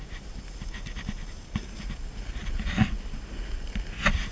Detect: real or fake real